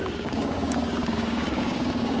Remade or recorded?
remade